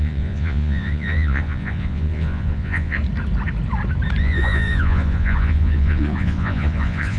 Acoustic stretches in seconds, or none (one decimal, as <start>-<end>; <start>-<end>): 3.0-4.2